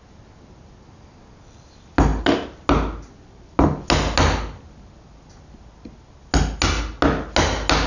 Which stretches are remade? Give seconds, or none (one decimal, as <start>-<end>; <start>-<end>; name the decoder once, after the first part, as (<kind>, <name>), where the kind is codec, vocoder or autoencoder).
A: none

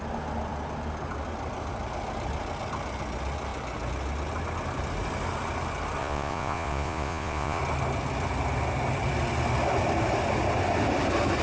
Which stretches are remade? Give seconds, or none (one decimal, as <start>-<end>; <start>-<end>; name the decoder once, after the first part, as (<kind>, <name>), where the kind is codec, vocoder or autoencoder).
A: 6.0-7.6 (vocoder, Vocos)

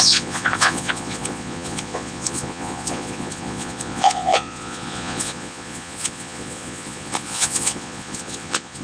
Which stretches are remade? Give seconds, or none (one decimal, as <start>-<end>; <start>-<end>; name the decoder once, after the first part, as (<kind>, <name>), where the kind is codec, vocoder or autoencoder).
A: 0.0-8.8 (vocoder, Vocos)